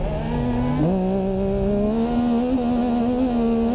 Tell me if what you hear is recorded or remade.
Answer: recorded